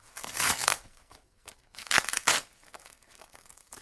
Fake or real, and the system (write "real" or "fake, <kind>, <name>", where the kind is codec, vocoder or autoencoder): fake, codec, SNAC